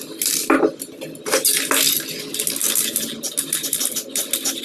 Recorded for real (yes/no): yes